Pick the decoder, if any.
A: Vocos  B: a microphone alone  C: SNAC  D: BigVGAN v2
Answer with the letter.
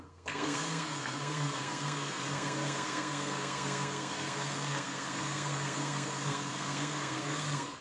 C